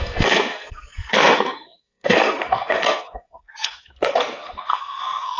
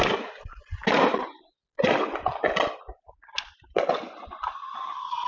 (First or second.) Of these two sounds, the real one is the second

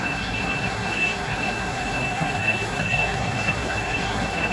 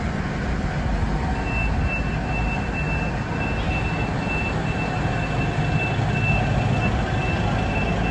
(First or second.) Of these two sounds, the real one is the second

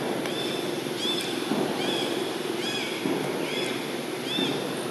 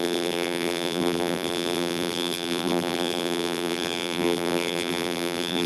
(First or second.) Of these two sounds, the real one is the first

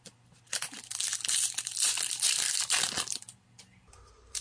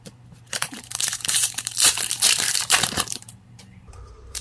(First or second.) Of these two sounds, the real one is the first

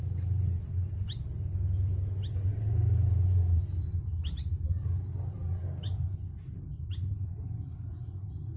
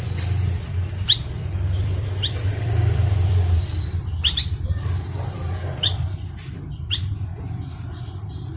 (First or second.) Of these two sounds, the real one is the first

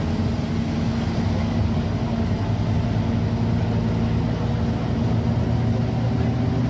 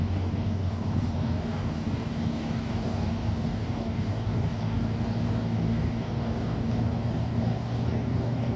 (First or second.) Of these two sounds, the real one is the first